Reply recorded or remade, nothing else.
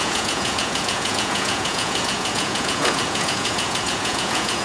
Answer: remade